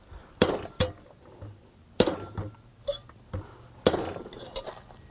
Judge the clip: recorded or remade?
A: recorded